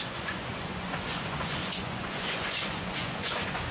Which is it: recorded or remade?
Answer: remade